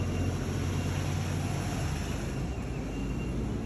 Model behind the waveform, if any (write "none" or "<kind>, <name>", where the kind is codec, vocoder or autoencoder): none